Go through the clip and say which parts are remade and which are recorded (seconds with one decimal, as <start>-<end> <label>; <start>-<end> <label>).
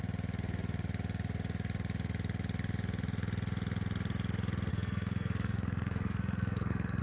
0.0-4.7 recorded; 4.7-7.0 remade